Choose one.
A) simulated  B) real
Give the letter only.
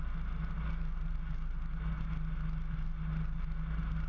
B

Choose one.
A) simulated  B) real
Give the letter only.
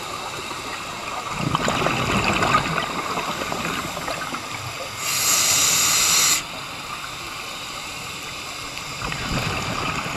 B